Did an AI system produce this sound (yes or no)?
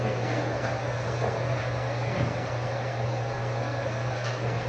yes